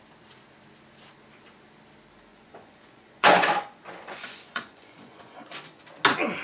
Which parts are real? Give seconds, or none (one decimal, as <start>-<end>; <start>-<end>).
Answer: 0.0-2.3; 5.8-6.4